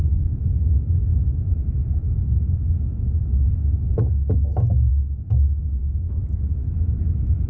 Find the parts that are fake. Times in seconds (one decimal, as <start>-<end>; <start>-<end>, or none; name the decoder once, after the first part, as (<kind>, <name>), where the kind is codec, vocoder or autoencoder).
1.1-4.9 (autoencoder, DAC-VAE); 5.8-6.7